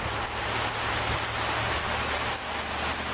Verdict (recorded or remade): recorded